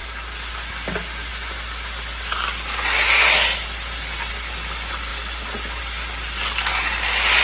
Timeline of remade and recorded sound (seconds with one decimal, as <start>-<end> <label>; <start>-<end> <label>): 0.0-7.4 recorded